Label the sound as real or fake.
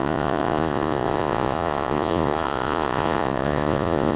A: fake